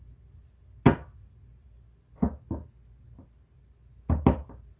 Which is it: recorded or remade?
recorded